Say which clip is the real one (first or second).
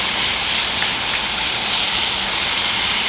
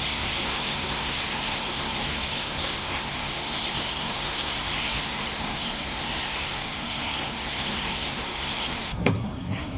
first